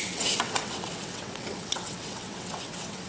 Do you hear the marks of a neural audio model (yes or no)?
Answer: yes